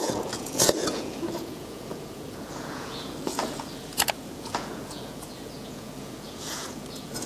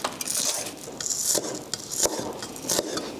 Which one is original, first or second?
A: second